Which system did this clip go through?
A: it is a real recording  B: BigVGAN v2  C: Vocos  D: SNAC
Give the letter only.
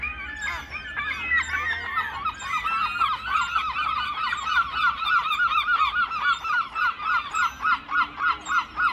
A